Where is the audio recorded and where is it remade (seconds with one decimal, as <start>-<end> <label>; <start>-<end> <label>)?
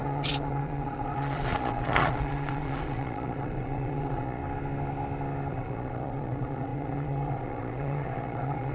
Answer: 0.0-4.4 remade; 4.4-5.5 recorded; 5.5-8.7 remade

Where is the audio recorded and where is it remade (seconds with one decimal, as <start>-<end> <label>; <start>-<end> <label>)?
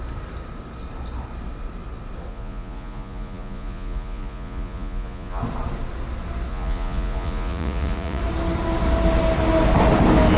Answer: 0.0-2.3 recorded; 2.3-5.4 remade; 5.4-6.5 recorded; 6.5-8.2 remade; 8.2-10.4 recorded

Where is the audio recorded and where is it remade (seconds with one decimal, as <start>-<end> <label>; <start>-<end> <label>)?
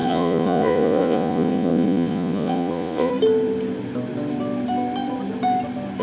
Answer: 0.0-3.1 remade; 3.1-6.0 recorded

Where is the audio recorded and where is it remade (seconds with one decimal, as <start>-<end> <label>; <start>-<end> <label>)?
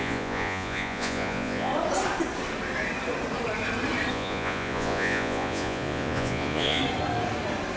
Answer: 0.0-1.7 remade; 1.7-4.1 recorded; 4.1-6.8 remade; 6.8-7.8 recorded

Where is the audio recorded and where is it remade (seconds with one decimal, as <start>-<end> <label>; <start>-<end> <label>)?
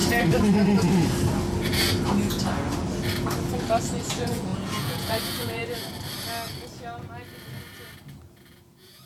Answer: 0.0-3.8 recorded; 3.8-5.6 remade; 5.6-8.3 recorded; 8.3-9.1 remade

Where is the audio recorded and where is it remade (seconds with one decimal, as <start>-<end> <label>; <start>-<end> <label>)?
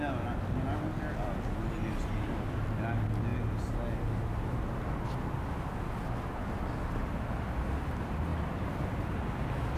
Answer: 0.0-9.8 recorded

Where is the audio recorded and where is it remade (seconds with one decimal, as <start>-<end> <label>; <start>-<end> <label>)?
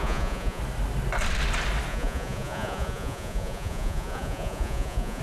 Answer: 0.0-0.6 remade; 0.6-1.9 recorded; 1.9-5.2 remade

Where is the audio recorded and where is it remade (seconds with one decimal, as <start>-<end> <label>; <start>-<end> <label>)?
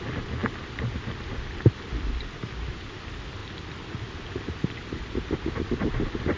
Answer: 0.0-6.4 recorded